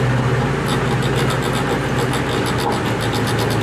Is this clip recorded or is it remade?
recorded